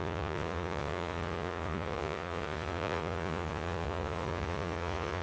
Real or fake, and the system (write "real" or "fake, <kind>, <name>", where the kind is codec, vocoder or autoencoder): fake, vocoder, Vocos